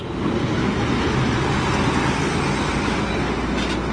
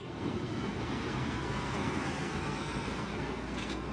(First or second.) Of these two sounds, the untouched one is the first